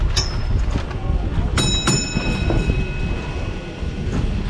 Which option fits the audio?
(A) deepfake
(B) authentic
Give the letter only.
B